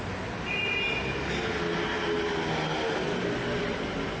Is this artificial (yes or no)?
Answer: no